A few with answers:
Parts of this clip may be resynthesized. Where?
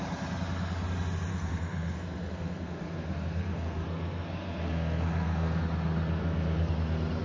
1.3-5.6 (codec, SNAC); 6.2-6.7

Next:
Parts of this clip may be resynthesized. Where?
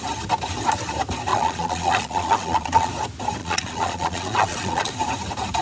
1.3-2.9 (vocoder, Vocos); 3.4-4.9